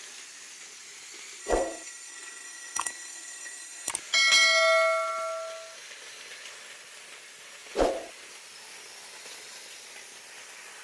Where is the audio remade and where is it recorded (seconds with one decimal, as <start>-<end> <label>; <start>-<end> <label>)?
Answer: 0.0-1.4 recorded; 1.4-3.9 remade; 3.9-10.8 recorded